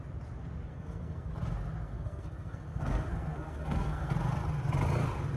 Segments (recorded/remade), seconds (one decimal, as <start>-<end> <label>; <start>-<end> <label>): 0.0-0.7 recorded; 0.7-1.3 remade; 1.3-1.8 recorded; 1.8-4.1 remade; 4.1-5.4 recorded